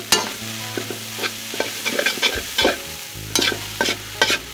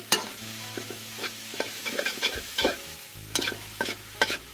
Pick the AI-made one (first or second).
second